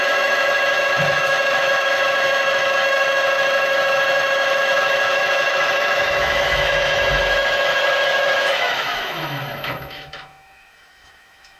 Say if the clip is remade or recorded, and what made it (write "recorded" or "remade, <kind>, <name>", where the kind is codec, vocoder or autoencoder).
remade, autoencoder, DAC-VAE